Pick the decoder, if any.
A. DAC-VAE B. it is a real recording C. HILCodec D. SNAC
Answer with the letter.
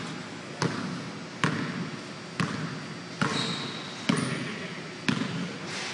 B